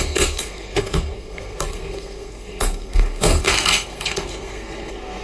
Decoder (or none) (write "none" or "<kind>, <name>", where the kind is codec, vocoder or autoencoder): codec, SNAC